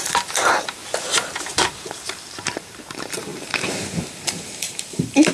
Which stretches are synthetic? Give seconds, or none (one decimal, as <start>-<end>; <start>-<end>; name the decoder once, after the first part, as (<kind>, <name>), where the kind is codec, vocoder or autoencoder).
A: 0.0-0.8 (vocoder, BigVGAN v2); 1.4-5.3